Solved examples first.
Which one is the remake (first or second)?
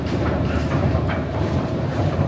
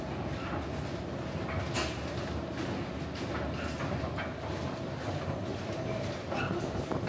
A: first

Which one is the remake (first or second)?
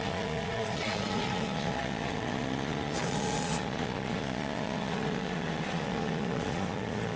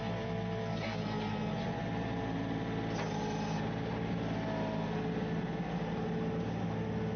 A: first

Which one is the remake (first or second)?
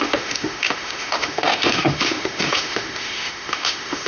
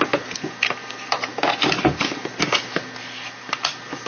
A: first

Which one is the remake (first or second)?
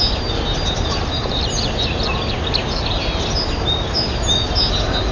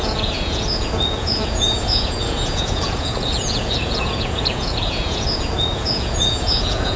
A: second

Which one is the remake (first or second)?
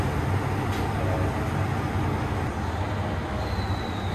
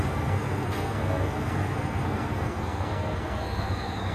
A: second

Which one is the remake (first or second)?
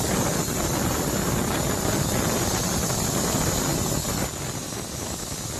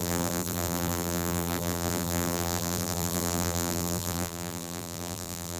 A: second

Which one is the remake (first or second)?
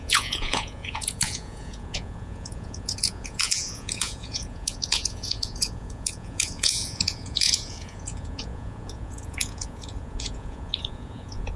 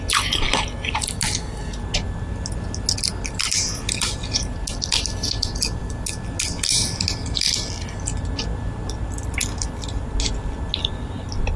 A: first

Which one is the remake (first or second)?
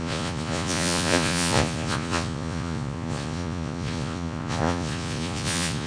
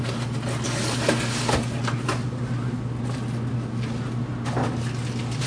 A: first